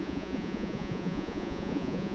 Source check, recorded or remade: remade